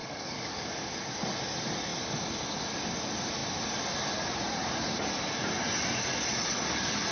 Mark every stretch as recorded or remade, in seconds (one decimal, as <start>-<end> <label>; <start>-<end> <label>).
0.0-0.9 remade; 0.9-7.1 recorded